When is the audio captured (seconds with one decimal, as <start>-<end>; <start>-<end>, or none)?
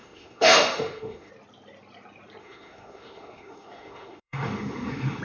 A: 1.3-2.4